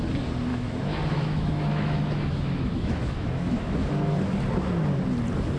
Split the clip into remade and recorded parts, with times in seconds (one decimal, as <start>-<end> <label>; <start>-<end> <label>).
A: 0.0-0.5 recorded; 0.5-3.9 remade; 3.9-5.6 recorded